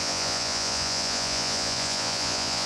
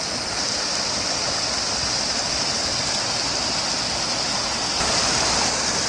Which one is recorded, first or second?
second